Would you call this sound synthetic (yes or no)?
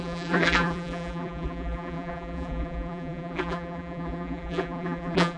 yes